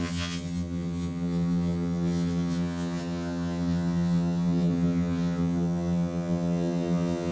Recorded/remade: remade